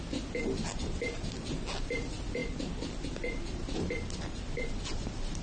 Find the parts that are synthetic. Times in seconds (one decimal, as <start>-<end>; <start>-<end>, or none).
none

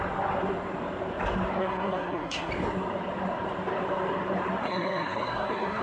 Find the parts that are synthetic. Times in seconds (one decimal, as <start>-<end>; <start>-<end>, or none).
1.6-2.5; 4.6-5.8

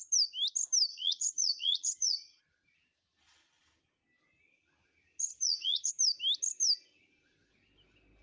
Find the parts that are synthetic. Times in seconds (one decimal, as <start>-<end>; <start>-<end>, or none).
0.9-2.4; 5.3-5.9